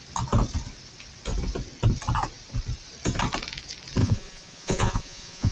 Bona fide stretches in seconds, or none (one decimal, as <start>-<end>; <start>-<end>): 0.0-4.0